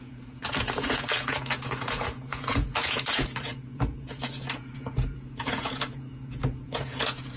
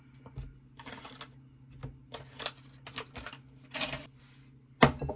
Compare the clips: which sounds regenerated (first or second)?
first